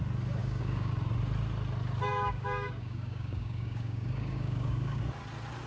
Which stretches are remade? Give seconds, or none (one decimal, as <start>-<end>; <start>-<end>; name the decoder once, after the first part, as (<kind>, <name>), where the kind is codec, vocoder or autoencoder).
0.4-0.9 (codec, DAC); 2.1-5.0